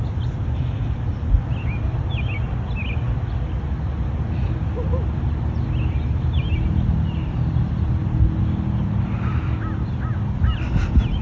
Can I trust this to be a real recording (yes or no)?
yes